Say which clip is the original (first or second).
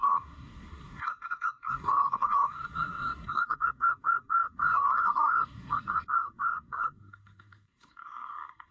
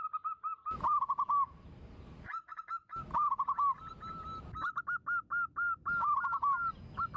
second